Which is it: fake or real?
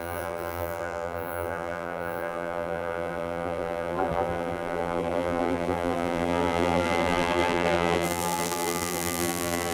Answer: fake